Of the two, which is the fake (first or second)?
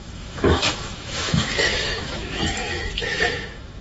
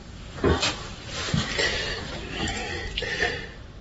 first